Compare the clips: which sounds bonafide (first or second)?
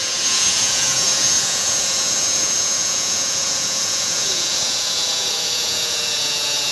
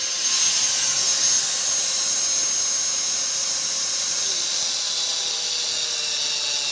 second